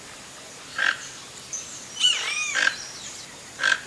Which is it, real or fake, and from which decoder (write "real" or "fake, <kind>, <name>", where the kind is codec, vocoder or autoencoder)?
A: real